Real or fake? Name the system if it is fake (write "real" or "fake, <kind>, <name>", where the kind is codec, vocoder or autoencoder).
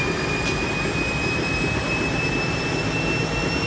real